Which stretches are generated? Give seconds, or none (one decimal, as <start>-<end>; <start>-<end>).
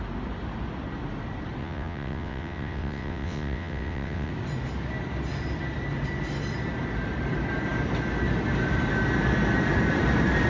1.6-4.3